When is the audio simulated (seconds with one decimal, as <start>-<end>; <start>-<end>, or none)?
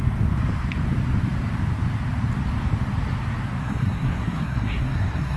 3.6-5.4